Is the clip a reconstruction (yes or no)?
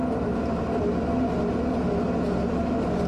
no